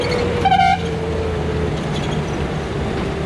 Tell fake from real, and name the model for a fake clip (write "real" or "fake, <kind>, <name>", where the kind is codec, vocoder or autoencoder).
fake, vocoder, BigVGAN v2